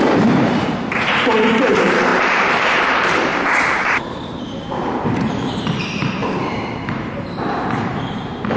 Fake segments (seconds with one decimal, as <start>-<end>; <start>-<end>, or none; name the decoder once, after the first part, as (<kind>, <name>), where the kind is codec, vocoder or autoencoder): 0.0-8.6 (vocoder, BigVGAN v2)